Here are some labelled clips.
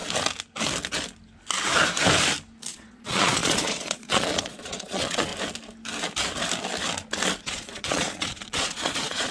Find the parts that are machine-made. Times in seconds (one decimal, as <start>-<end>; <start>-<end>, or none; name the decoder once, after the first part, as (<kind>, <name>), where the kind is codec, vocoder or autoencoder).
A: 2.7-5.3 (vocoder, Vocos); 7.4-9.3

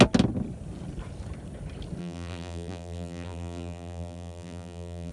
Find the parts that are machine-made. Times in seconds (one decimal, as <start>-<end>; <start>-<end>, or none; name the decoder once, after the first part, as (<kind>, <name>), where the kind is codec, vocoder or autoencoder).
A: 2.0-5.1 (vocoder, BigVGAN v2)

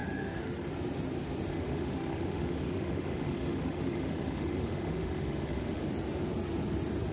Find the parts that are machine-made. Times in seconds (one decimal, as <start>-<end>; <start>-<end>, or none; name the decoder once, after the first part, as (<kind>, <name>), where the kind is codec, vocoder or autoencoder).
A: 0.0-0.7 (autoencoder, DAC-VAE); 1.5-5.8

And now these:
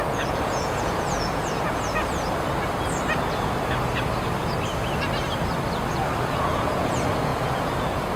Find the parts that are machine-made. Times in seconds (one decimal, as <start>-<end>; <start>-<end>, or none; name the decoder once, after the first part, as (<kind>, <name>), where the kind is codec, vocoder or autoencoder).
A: 0.0-2.0 (vocoder, Vocos); 6.2-8.2

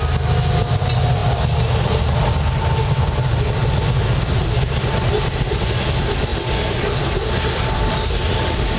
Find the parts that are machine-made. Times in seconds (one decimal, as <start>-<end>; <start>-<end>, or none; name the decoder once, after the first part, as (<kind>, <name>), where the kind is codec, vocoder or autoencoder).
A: 6.3-8.1 (vocoder, BigVGAN v2)

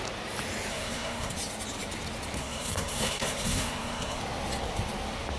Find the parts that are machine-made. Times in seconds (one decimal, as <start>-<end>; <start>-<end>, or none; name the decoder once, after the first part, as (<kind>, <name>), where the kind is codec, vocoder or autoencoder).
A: 0.7-1.3 (codec, SNAC); 2.4-4.2

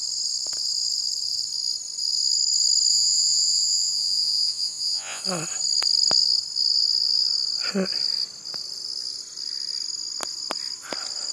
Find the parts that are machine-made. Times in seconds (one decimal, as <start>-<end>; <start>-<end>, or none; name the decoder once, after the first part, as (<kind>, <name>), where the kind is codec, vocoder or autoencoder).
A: 2.9-5.2 (vocoder, Vocos)